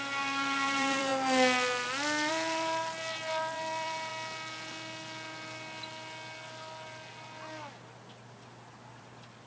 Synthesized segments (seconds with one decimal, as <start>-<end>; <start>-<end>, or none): 0.0-1.1; 2.3-4.1; 9.0-9.5